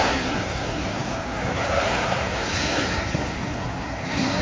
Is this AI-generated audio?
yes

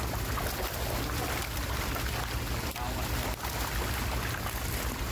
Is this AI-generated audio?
no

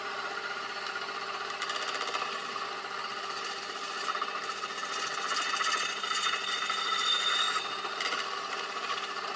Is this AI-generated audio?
no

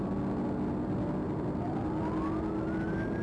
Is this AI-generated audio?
no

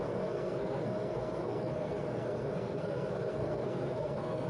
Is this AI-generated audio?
yes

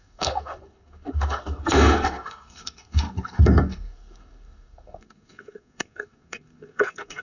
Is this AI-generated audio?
yes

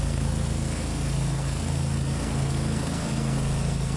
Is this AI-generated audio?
yes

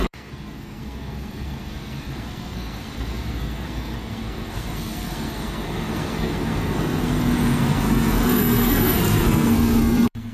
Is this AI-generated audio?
yes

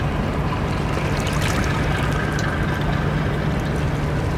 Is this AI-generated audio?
no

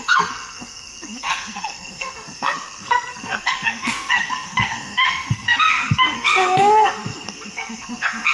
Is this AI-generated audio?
yes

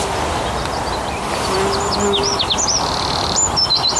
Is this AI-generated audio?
no